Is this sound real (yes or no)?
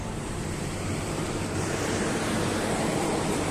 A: no